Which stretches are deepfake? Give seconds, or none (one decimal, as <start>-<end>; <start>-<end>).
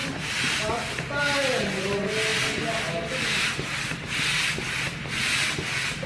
none